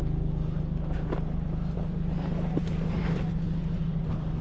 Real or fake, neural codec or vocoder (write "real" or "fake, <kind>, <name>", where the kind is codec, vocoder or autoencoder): real